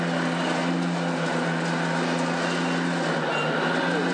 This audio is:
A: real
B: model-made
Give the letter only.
A